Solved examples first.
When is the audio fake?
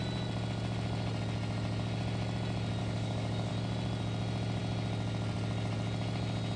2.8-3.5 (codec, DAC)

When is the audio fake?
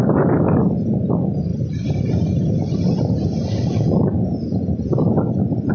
1.5-3.0 (vocoder, BigVGAN v2)